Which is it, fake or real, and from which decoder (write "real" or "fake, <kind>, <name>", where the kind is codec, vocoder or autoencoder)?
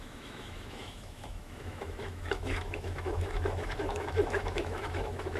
fake, autoencoder, DAC-VAE